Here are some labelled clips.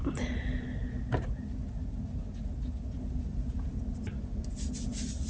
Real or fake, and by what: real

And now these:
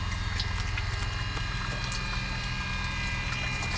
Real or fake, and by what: real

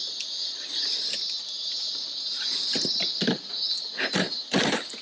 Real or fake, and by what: real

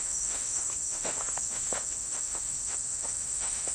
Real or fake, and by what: fake, autoencoder, DAC-VAE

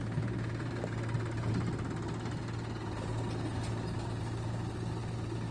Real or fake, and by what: real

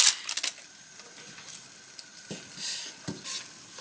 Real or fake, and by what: real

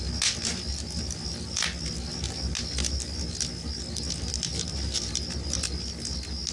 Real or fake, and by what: real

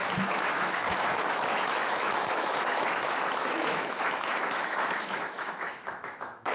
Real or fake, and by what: fake, autoencoder, DAC-VAE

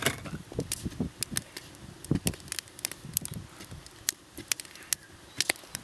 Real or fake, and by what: real